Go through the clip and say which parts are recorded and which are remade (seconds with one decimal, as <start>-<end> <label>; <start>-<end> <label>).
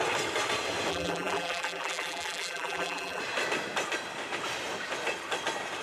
0.0-0.9 recorded; 0.9-3.2 remade; 3.2-5.8 recorded